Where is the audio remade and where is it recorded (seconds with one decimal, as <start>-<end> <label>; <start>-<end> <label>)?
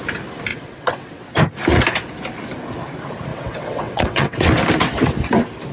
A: 0.0-0.5 recorded; 0.5-1.2 remade; 1.2-3.3 recorded; 3.3-4.5 remade; 4.5-5.7 recorded